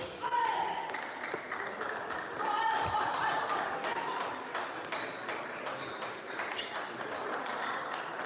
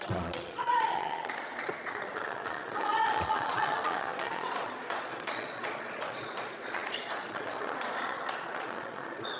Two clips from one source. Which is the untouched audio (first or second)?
first